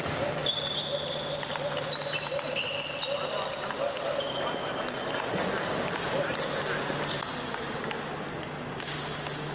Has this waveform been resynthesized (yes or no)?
no